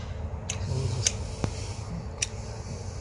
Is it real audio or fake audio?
real